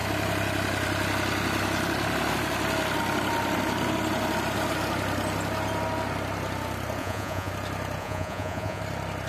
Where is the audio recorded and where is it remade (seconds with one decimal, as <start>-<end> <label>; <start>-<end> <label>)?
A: 0.0-7.0 recorded; 7.0-7.5 remade; 7.5-8.0 recorded; 8.0-8.8 remade; 8.8-9.3 recorded